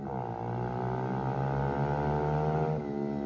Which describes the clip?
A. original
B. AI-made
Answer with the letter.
A